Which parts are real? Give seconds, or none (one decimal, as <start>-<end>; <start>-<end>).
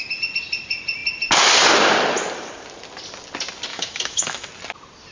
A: 0.0-3.7; 4.5-5.1